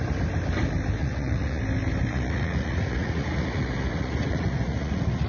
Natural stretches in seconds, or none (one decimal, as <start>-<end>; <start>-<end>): 0.0-1.0; 1.6-2.1